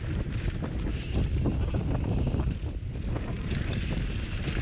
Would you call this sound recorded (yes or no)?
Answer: yes